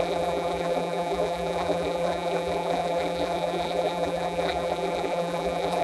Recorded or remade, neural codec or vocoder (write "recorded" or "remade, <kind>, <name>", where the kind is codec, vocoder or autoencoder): remade, vocoder, BigVGAN v2